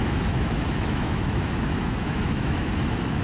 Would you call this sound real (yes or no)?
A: no